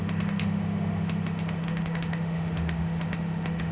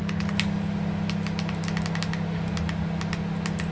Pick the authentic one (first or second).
second